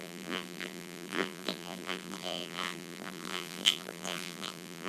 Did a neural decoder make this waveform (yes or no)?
yes